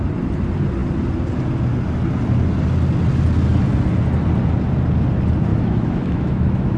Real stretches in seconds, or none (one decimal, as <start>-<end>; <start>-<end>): 0.0-5.5